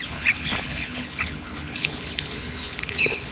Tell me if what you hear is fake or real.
fake